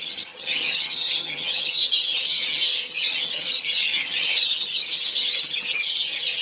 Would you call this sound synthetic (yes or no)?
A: yes